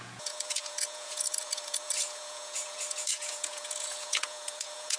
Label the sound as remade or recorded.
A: remade